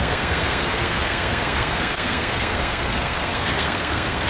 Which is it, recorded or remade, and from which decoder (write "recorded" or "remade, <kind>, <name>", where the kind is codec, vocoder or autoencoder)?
remade, codec, SNAC